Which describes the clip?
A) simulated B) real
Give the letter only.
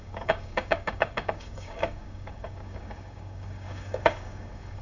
A